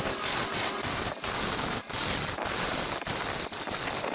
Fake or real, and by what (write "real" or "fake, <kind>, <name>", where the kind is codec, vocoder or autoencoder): real